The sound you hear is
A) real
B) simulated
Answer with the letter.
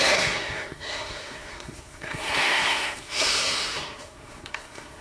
B